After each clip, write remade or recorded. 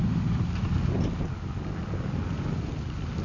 recorded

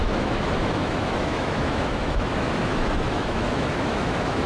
remade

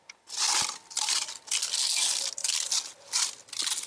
recorded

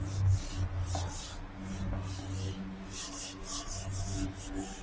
recorded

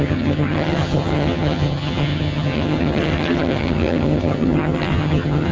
remade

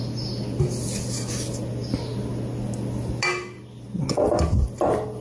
recorded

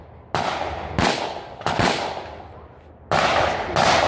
recorded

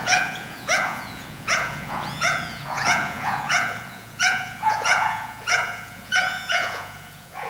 remade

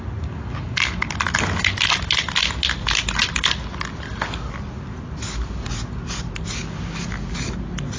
recorded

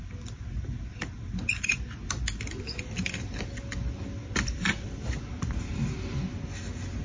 recorded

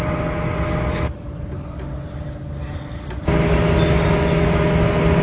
recorded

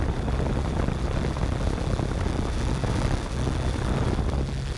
recorded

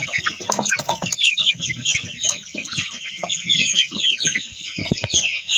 remade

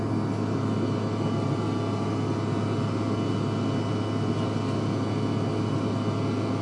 recorded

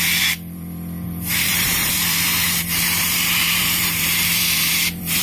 remade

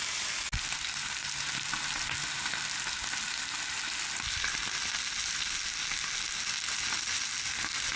recorded